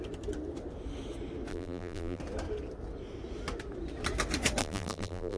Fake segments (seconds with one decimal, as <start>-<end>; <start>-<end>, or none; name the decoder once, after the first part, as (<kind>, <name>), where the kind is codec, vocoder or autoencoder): 1.5-2.2 (vocoder, BigVGAN v2); 4.6-5.4

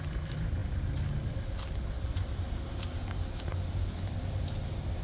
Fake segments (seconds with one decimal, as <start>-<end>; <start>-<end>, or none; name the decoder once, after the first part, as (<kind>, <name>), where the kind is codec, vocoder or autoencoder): none

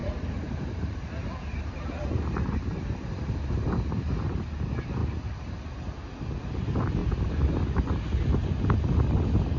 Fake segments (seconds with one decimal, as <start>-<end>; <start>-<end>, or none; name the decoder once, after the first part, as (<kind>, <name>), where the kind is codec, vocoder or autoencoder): 0.0-4.4 (vocoder, BigVGAN v2)

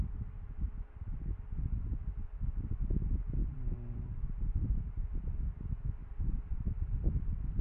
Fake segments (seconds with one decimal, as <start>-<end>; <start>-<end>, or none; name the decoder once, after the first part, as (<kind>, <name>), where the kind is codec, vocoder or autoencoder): 3.4-4.9 (vocoder, BigVGAN v2); 6.0-7.6